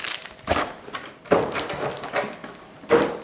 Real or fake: real